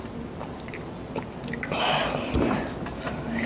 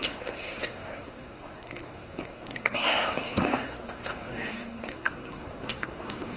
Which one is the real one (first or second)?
first